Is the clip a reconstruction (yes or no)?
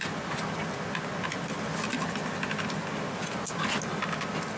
no